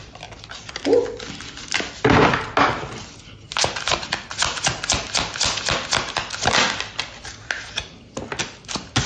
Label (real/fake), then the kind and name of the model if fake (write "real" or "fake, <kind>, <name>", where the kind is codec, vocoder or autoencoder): real